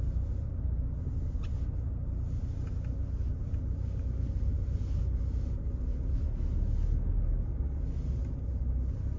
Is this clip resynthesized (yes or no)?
no